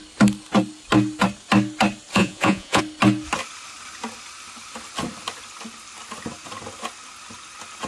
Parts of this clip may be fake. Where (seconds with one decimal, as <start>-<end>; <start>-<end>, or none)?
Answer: 2.1-2.8

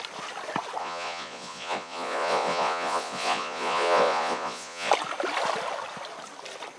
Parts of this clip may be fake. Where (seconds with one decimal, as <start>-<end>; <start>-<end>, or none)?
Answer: 0.8-4.9

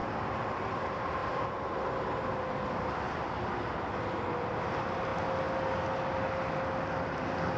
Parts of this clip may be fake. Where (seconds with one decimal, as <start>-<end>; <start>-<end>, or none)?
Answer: none

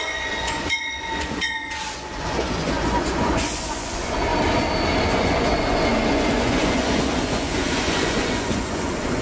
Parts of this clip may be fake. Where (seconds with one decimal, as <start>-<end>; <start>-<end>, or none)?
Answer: 0.0-4.3; 5.0-9.2